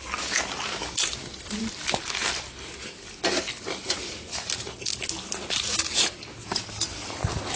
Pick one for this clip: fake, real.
real